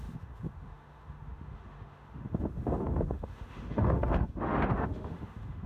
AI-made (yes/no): yes